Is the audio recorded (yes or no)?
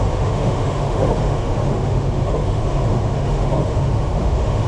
no